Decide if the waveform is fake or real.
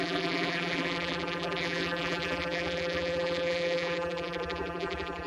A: fake